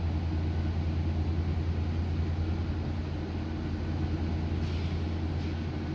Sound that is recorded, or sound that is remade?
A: recorded